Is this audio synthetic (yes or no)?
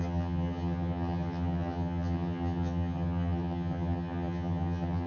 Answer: yes